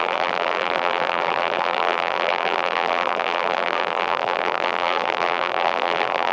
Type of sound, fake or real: fake